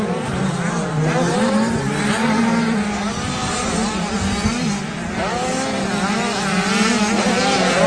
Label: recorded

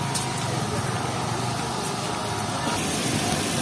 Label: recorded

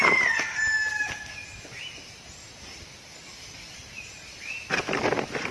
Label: recorded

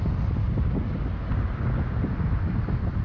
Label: recorded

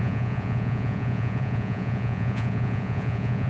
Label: remade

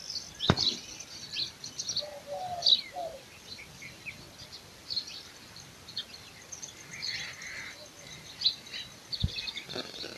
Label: recorded